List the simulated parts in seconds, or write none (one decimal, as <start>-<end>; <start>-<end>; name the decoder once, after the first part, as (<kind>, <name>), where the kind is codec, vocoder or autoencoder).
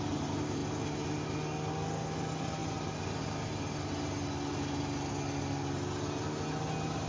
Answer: none